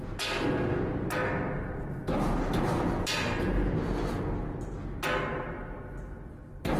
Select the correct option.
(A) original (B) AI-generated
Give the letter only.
A